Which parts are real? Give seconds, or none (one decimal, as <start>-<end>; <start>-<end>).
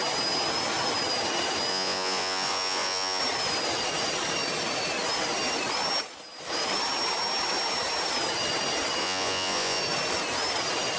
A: 0.0-1.7; 3.2-9.0; 9.8-11.0